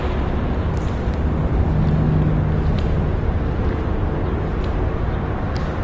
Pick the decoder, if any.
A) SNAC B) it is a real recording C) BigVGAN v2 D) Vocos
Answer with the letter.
B